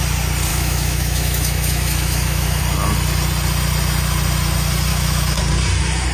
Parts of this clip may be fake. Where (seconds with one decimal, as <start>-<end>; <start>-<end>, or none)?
0.5-2.6; 4.9-5.4